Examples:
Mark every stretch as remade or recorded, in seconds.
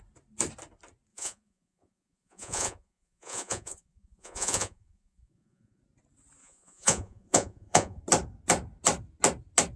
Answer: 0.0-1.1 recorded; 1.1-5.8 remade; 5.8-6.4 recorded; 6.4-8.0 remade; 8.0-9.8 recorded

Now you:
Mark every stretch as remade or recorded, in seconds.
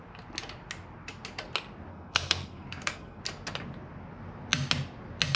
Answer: 0.0-1.9 recorded; 1.9-3.2 remade; 3.2-5.4 recorded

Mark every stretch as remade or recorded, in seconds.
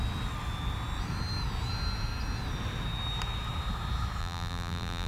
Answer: 0.0-4.2 recorded; 4.2-5.1 remade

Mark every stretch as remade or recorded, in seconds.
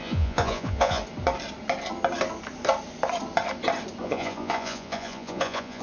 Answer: 0.0-1.0 remade; 1.0-4.0 recorded; 4.0-5.8 remade